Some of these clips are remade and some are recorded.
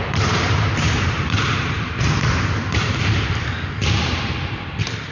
remade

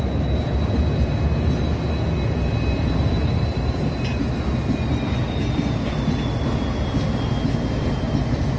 recorded